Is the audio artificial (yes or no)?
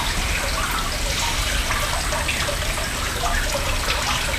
no